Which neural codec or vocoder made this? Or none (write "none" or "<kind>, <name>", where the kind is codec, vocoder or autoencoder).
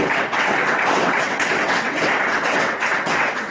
vocoder, WaveNeXt